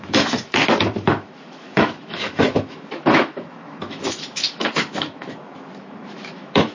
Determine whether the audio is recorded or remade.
remade